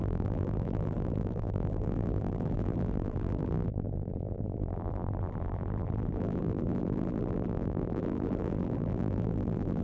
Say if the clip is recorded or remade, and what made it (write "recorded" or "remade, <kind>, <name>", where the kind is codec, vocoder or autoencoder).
remade, vocoder, BigVGAN v2